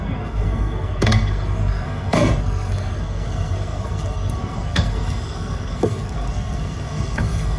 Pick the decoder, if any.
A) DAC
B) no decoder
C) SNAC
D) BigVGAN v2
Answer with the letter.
C